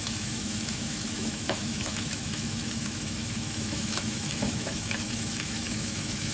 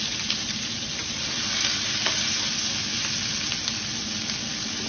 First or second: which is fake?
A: first